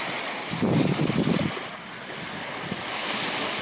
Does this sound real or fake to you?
real